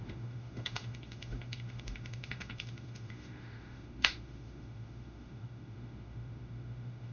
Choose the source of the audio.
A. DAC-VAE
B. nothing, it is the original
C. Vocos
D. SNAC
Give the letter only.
A